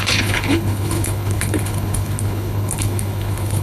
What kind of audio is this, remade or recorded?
remade